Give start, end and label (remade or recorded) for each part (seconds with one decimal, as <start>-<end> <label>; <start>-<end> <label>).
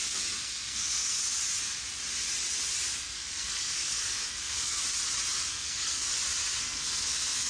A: 0.0-1.2 remade; 1.2-3.0 recorded; 3.0-4.8 remade; 4.8-5.5 recorded; 5.5-6.1 remade; 6.1-6.6 recorded; 6.6-7.5 remade